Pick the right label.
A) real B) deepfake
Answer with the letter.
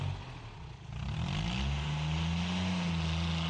A